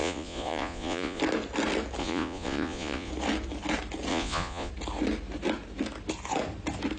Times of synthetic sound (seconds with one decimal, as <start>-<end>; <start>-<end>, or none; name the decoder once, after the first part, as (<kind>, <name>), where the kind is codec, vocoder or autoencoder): 0.0-1.2 (vocoder, Vocos); 2.0-3.1; 4.1-4.7